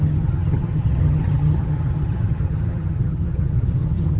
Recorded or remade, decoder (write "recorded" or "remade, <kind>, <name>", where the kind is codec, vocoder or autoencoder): remade, vocoder, HiFi-GAN